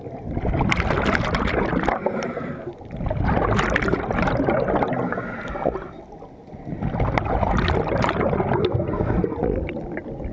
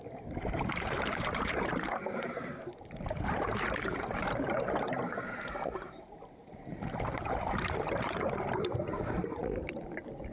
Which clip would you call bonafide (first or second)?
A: first